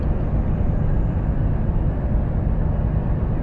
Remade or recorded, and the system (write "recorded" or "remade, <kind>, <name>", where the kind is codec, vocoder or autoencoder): remade, vocoder, BigVGAN v2